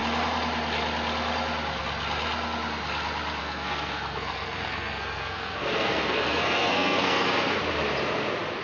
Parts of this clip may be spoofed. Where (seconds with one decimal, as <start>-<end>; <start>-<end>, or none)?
3.4-7.6